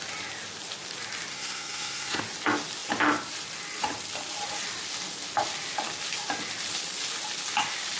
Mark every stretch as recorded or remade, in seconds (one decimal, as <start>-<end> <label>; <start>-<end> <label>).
0.0-1.3 recorded; 1.3-2.2 remade; 2.2-8.0 recorded